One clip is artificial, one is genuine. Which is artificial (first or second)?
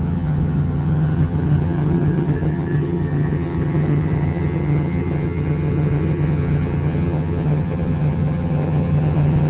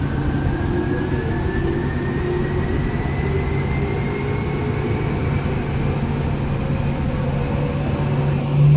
first